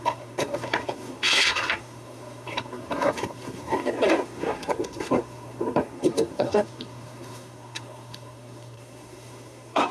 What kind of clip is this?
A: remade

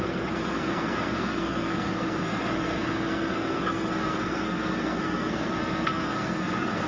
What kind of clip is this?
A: remade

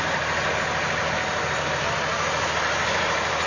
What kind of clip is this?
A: recorded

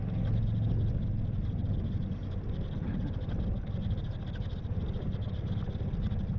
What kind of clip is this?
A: recorded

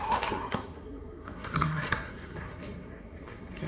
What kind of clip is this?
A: remade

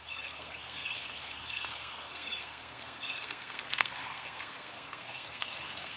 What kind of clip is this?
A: remade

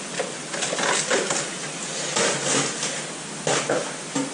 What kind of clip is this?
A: recorded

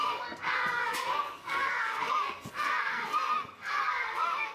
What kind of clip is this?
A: remade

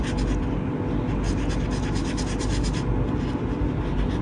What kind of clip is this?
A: recorded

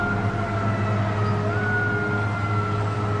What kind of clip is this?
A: recorded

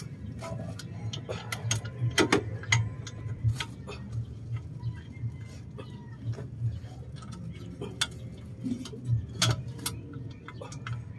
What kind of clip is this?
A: recorded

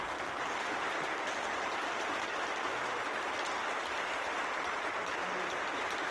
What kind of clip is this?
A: recorded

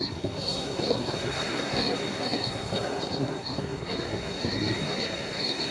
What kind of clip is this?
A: remade